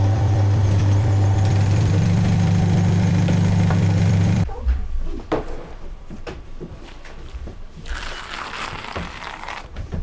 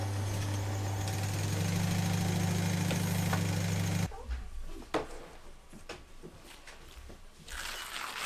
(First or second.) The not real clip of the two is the first